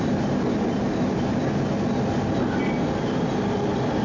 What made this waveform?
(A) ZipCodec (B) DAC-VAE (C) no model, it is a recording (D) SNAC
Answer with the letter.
C